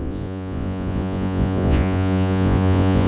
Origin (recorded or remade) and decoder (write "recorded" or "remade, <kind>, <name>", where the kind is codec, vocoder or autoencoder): remade, vocoder, Vocos